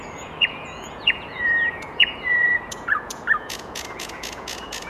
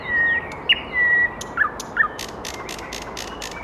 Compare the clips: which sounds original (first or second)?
second